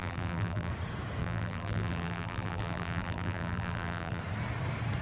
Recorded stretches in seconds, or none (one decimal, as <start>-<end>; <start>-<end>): 0.7-1.2; 4.2-5.0

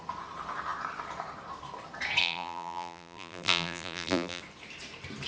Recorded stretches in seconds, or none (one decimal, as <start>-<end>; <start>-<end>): 0.0-2.2; 4.4-5.3

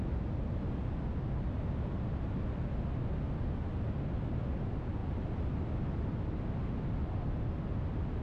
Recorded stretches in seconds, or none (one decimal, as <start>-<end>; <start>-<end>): 0.0-8.2

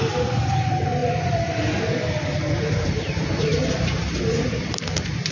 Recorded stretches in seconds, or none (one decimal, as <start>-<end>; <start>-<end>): none